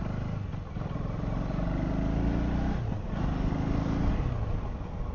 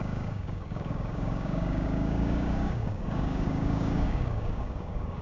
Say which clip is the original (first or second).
first